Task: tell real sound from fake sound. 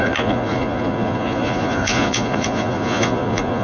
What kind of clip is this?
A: fake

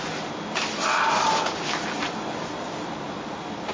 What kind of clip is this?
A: real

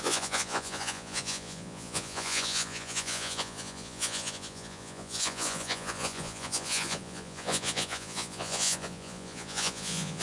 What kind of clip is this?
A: fake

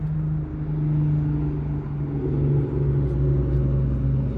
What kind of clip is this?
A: real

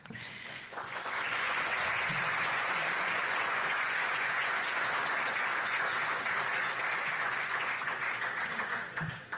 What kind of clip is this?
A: fake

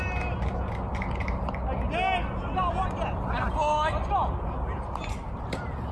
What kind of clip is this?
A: real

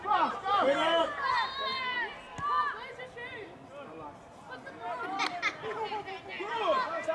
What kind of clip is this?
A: real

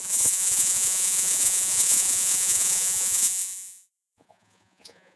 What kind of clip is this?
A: fake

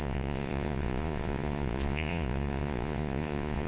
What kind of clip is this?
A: fake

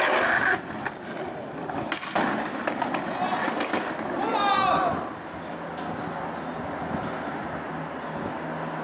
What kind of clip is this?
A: real